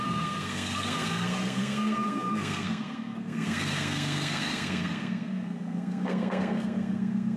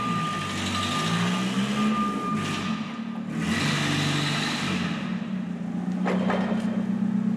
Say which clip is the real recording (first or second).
second